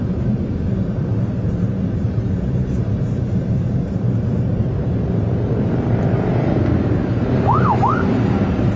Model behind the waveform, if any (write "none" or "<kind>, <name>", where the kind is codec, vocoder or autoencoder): vocoder, BigVGAN v2